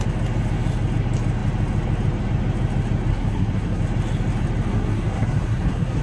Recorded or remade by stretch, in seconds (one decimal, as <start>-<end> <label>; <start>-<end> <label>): 0.0-3.1 recorded; 3.1-3.8 remade; 3.8-4.7 recorded; 4.7-6.0 remade